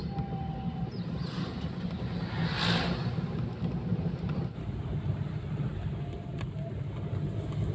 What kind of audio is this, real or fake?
real